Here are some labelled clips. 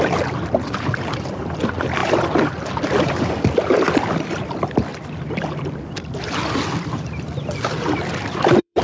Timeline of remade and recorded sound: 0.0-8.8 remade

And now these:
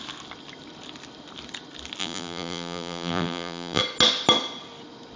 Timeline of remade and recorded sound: 0.0-2.0 recorded; 2.0-3.8 remade; 3.8-5.2 recorded

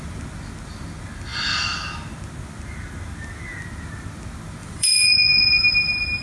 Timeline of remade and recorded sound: 0.0-4.6 recorded; 4.6-5.2 remade; 5.2-6.2 recorded